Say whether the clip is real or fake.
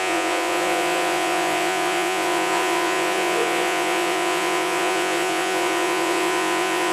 fake